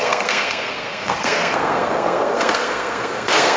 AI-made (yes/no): yes